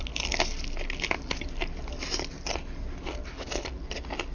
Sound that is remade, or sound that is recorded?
recorded